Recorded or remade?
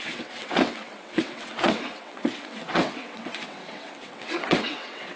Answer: remade